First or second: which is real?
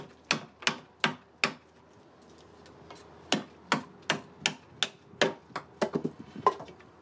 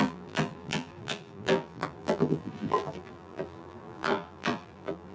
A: first